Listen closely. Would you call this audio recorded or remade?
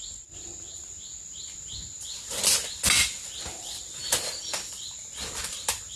recorded